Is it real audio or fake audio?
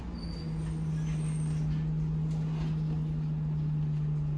real